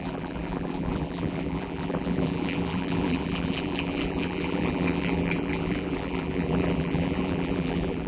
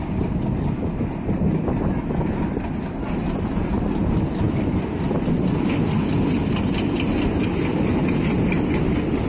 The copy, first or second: first